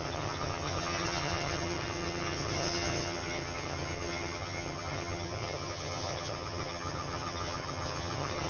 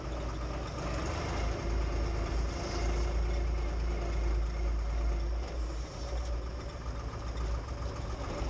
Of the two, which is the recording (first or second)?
second